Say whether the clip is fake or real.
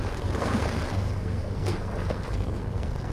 fake